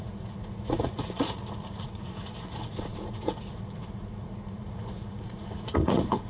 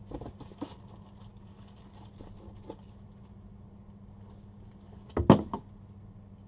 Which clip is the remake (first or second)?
first